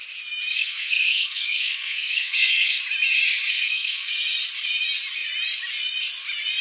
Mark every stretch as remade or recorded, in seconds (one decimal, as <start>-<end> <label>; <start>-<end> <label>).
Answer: 0.0-0.5 recorded; 0.5-2.8 remade; 2.8-3.5 recorded; 3.5-4.1 remade; 4.1-6.6 recorded